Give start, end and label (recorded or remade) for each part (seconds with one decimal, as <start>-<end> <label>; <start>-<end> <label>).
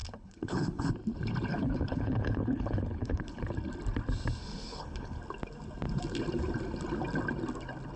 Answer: 0.0-0.9 remade; 0.9-1.5 recorded; 1.5-3.5 remade; 3.5-4.4 recorded; 4.4-5.2 remade; 5.2-8.0 recorded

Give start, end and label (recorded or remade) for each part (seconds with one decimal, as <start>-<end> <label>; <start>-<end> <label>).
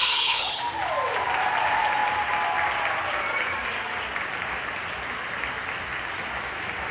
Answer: 0.0-0.6 remade; 0.6-6.9 recorded